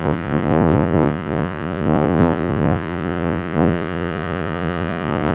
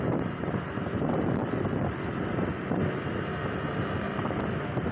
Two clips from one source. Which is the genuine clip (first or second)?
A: second